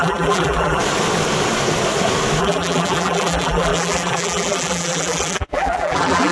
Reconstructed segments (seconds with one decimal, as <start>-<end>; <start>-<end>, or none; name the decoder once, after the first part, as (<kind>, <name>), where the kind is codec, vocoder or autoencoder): 0.0-0.8 (vocoder, BigVGAN v2); 2.4-6.3